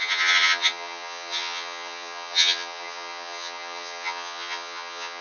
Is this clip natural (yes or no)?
no